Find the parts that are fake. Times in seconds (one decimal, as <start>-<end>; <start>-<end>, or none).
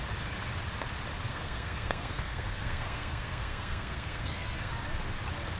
1.3-4.7